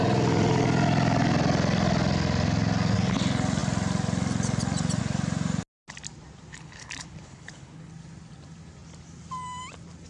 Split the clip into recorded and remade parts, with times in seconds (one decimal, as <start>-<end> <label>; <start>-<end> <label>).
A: 0.0-6.5 recorded; 6.5-7.9 remade; 7.9-10.1 recorded